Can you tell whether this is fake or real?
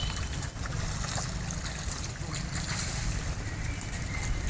real